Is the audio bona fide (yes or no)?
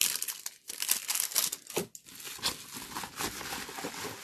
yes